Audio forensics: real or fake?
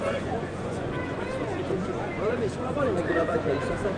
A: fake